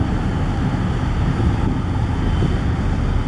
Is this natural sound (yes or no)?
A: yes